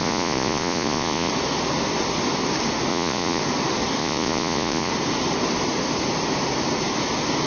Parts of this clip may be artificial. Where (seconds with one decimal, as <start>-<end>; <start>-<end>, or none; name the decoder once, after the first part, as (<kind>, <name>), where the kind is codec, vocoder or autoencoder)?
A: 0.0-1.3 (vocoder, Vocos); 2.9-3.4; 4.0-4.9